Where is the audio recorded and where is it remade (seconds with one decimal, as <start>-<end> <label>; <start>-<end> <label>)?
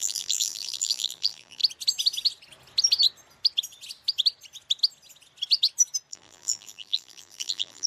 0.0-1.6 remade; 1.6-6.1 recorded; 6.1-7.9 remade